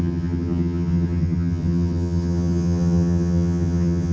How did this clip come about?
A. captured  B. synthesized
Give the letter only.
B